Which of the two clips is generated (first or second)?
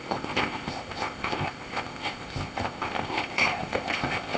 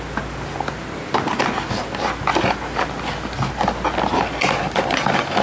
first